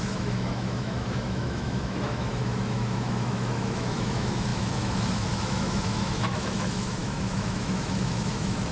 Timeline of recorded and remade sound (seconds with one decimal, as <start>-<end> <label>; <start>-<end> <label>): 0.0-8.7 remade